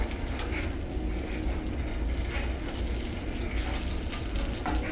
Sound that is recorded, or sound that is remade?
recorded